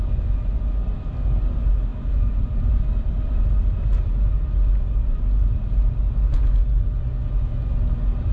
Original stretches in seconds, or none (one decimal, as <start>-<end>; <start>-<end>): 0.0-8.3